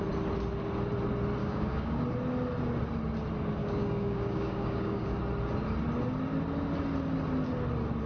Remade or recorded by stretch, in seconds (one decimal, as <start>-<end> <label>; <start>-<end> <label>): 0.0-1.4 recorded; 1.4-2.0 remade; 2.0-3.6 recorded; 3.6-5.2 remade; 5.2-8.1 recorded